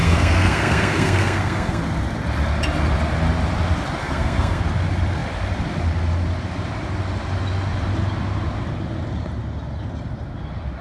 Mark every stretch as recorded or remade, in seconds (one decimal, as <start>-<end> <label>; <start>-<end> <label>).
0.0-1.8 remade; 1.8-4.0 recorded; 4.0-4.6 remade; 4.6-10.8 recorded